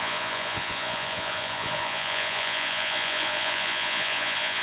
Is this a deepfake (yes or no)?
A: yes